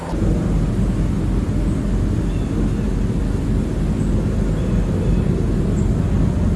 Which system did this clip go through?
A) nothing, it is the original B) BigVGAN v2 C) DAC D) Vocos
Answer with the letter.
A